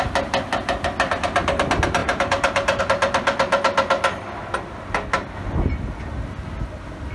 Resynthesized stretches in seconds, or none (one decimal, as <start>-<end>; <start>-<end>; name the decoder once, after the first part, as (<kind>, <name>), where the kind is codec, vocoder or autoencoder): 2.0-2.8 (vocoder, BigVGAN v2)